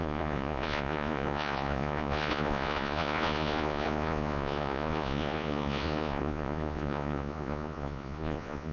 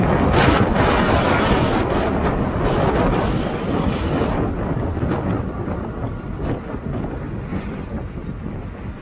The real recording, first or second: second